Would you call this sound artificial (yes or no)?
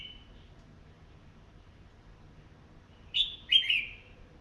yes